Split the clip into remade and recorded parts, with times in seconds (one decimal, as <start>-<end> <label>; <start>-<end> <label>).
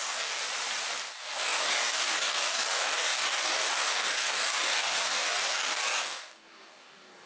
0.0-0.4 remade; 0.4-1.1 recorded; 1.1-7.3 remade